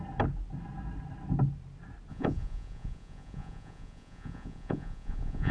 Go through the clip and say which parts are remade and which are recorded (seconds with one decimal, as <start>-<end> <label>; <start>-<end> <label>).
0.0-2.1 recorded; 2.1-5.5 remade